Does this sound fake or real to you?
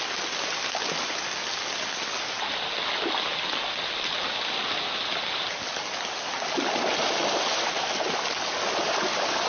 real